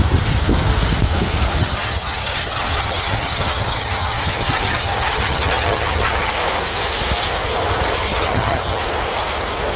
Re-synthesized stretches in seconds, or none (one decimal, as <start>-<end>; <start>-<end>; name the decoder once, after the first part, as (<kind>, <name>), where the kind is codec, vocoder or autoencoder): 1.6-6.3 (vocoder, HiFi-GAN); 8.1-8.8